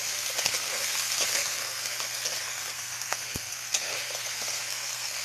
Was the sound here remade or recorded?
remade